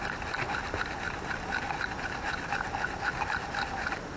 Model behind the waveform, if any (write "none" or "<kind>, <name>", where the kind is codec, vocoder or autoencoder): none